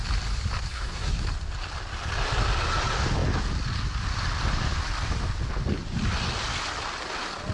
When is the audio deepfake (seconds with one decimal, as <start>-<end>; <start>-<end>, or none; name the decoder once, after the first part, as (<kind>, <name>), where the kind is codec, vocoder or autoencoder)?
0.7-1.2 (codec, SNAC)